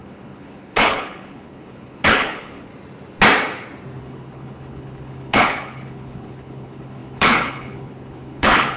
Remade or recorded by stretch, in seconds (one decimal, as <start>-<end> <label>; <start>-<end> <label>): 0.0-2.7 remade; 2.7-4.0 recorded; 4.0-8.8 remade